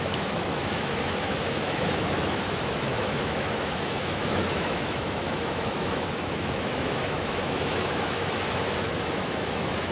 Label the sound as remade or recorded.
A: remade